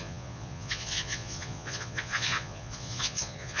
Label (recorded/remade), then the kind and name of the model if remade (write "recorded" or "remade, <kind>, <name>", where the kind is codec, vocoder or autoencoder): remade, vocoder, Vocos